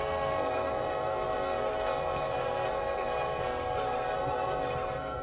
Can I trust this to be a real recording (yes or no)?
no